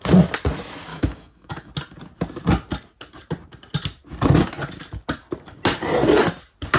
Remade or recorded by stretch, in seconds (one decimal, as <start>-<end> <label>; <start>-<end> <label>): 0.0-0.9 recorded; 0.9-1.7 remade; 1.7-6.8 recorded